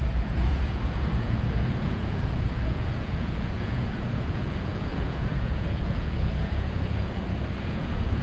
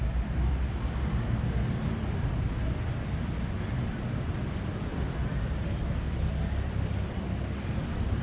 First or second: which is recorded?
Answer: second